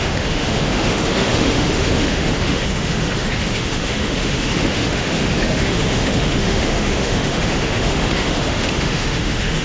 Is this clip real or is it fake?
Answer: fake